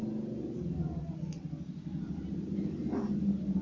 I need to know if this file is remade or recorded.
recorded